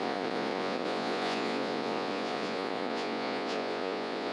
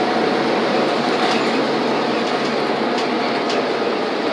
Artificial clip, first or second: first